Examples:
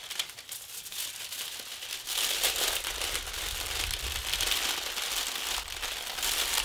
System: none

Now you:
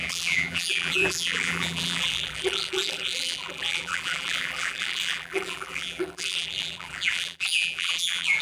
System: vocoder, BigVGAN v2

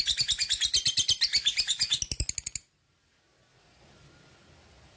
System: none